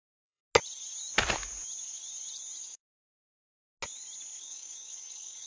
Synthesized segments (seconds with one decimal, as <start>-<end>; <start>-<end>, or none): 0.0-0.4; 2.6-3.2; 4.4-5.5